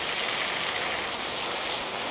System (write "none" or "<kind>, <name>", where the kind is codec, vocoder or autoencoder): none